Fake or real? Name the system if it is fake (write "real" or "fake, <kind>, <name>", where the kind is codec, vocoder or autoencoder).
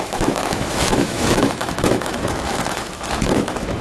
fake, autoencoder, DAC-VAE